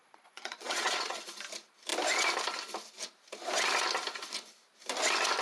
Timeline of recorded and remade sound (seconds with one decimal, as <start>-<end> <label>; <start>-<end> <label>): 0.0-1.2 remade; 1.2-5.4 recorded